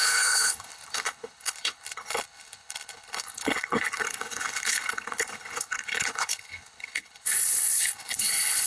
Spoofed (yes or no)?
yes